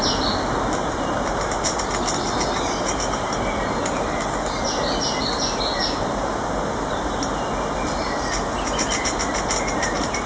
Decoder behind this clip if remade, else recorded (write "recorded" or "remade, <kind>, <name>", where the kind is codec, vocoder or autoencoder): recorded